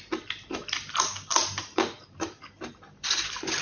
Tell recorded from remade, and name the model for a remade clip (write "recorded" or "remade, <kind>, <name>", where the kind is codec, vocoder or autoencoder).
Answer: remade, vocoder, BigVGAN v2